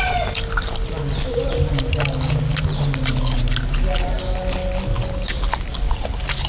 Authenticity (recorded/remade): recorded